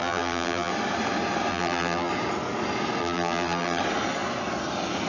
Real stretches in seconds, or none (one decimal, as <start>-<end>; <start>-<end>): 0.7-1.5; 2.1-3.0; 3.8-5.1